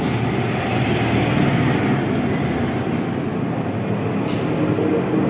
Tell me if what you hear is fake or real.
real